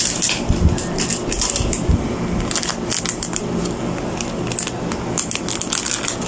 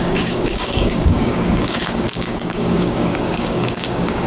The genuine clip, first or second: first